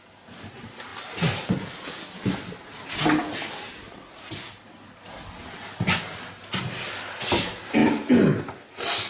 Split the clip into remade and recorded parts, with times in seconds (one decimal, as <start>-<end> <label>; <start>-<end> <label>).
0.0-9.1 recorded